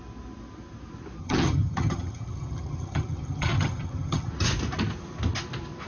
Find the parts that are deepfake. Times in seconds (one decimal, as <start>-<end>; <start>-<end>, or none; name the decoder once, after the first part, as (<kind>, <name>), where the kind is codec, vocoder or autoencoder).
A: 1.2-4.3 (vocoder, HiFi-GAN)